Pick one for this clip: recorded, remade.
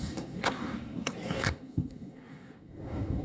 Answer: remade